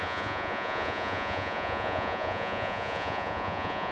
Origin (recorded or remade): remade